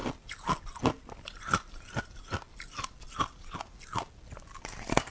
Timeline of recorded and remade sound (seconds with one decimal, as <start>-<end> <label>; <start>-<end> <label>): 0.0-5.1 recorded